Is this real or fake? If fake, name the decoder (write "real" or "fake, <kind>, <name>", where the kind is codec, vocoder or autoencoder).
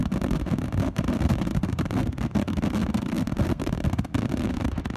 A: fake, codec, SNAC